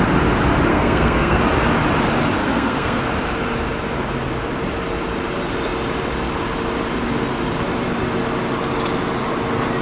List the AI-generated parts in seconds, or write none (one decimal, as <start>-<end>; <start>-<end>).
0.7-1.4; 2.4-3.0

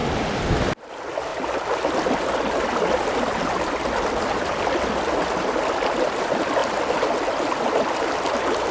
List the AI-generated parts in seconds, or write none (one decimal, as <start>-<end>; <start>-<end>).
none

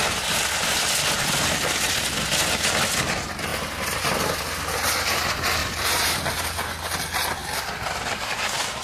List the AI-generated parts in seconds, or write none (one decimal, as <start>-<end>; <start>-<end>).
0.0-2.3; 5.6-6.2

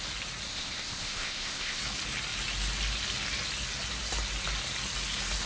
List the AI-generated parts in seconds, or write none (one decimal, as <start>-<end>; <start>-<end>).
0.5-1.8

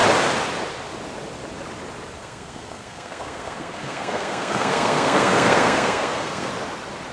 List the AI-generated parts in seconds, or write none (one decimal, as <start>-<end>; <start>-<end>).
2.2-6.5

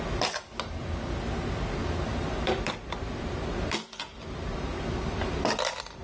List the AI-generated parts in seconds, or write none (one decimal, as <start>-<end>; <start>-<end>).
1.8-5.4

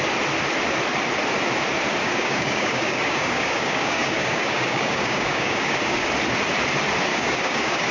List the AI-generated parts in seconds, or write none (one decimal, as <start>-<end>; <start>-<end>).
2.0-6.1; 7.1-7.9